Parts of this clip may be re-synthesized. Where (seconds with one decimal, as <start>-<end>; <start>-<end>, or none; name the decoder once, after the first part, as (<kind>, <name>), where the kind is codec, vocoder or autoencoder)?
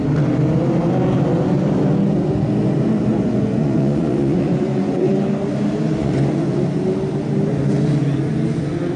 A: 3.1-5.1 (vocoder, Vocos); 6.0-6.6